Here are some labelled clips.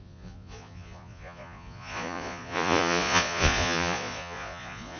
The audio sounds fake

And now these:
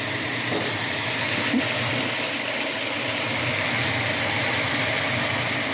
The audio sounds real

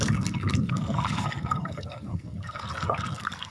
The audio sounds fake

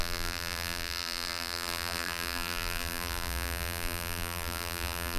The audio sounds fake